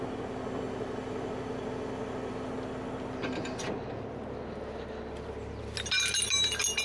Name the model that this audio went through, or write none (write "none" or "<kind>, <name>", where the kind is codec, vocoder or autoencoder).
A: none